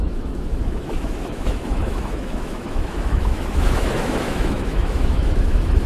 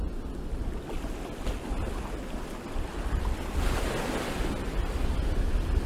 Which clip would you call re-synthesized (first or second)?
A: first